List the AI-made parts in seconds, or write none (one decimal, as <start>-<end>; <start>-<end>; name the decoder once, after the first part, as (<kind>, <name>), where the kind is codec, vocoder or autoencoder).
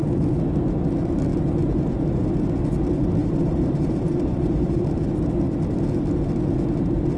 3.2-5.1 (vocoder, BigVGAN v2)